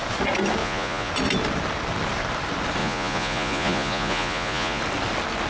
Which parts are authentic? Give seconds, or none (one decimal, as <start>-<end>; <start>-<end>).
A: 0.0-0.6; 1.1-2.8; 4.8-5.5